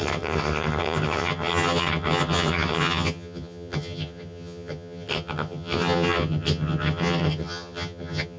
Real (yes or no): no